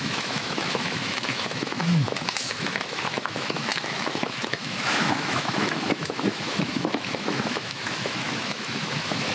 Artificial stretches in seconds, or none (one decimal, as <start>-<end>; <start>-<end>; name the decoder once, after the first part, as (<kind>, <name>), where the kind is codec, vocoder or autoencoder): 0.0-9.3 (autoencoder, DAC-VAE)